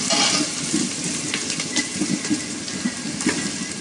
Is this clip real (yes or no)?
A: yes